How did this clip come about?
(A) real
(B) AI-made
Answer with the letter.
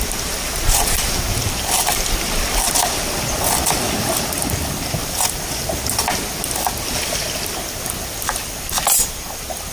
A